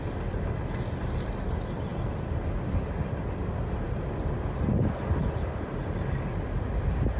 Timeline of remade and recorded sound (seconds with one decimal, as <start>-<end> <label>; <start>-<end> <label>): 0.0-7.2 recorded